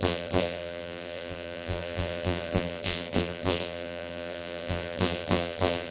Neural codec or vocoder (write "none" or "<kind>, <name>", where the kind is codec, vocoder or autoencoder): vocoder, BigVGAN v2